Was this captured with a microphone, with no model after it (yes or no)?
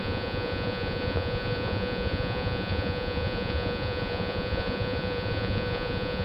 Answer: no